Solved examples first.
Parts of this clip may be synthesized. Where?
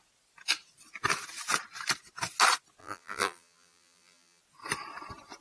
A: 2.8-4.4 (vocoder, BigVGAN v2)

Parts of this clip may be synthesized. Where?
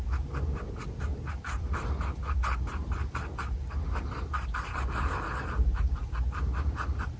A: 1.1-2.4 (vocoder, BigVGAN v2)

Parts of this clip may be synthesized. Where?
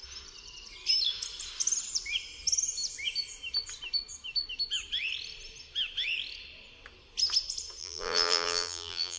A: 7.8-9.2 (vocoder, BigVGAN v2)